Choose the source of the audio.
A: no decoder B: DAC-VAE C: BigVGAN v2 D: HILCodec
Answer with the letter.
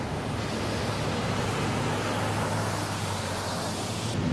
A